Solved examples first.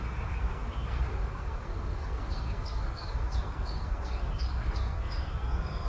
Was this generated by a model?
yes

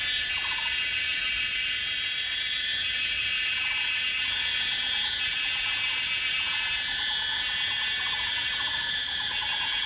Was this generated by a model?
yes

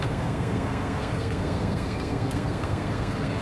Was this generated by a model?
yes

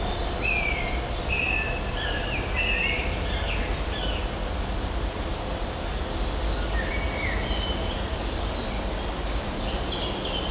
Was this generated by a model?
no